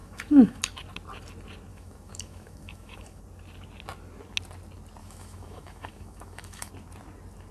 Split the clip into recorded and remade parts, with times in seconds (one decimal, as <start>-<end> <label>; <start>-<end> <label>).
0.0-0.6 remade; 0.6-1.7 recorded; 1.7-3.2 remade; 3.2-5.0 recorded; 5.0-6.7 remade; 6.7-7.5 recorded